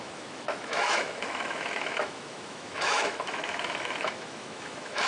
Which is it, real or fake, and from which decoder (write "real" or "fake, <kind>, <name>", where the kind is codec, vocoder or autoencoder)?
fake, autoencoder, DAC-VAE